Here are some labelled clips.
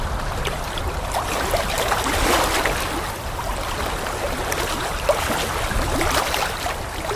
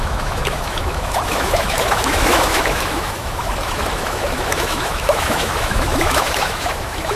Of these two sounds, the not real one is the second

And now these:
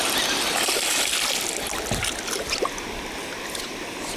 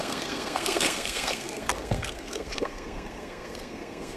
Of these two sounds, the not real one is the second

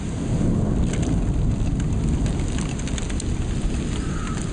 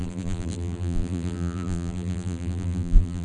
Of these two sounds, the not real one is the second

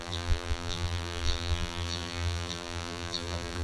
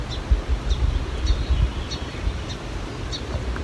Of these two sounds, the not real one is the first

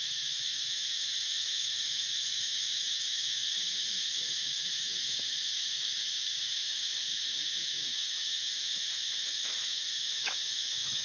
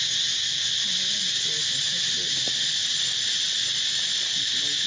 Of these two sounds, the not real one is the first